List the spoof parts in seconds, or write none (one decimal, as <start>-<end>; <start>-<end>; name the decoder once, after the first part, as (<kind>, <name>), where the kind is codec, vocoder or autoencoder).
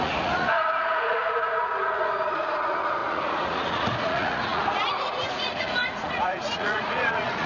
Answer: 0.0-7.5 (vocoder, Vocos)